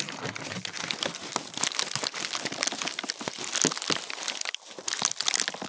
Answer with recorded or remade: recorded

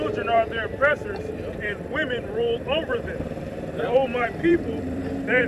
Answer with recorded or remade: remade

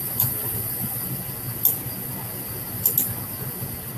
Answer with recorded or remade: recorded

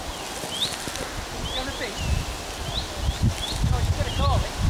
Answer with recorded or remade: recorded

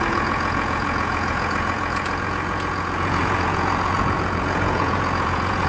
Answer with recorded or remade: remade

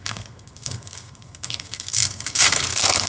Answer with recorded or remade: remade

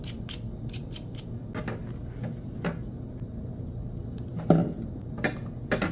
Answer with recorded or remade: recorded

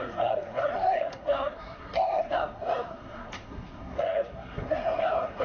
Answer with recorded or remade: remade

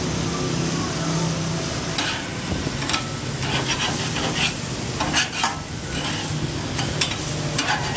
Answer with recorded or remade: recorded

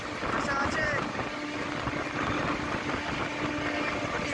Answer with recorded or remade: recorded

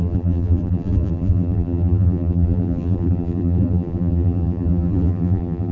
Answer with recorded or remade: remade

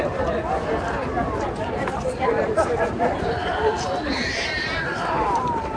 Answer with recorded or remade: recorded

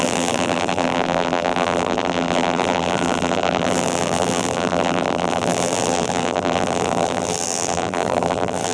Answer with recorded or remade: remade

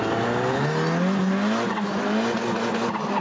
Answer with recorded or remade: recorded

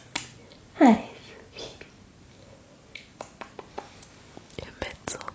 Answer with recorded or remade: recorded